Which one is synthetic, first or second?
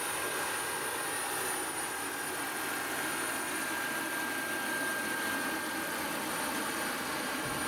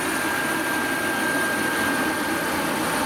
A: second